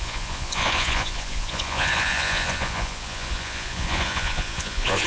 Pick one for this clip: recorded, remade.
remade